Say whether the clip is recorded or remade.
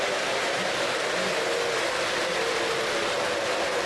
recorded